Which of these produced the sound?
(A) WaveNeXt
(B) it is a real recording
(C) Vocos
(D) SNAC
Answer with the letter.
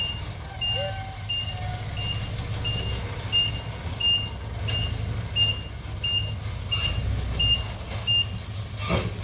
B